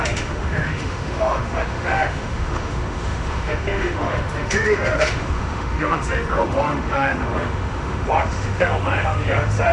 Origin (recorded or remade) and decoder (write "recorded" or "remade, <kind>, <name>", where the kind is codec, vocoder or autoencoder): remade, autoencoder, DAC-VAE